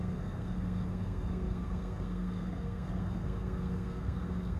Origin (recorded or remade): remade